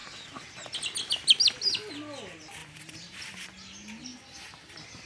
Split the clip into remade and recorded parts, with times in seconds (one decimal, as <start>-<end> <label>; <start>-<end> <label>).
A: 0.0-2.6 recorded; 2.6-3.5 remade; 3.5-4.1 recorded; 4.1-5.1 remade

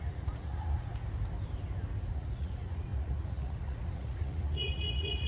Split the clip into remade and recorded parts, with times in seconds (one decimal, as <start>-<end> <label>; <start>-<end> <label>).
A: 0.0-0.9 remade; 0.9-2.1 recorded; 2.1-5.3 remade